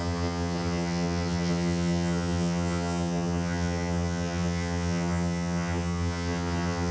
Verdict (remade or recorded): remade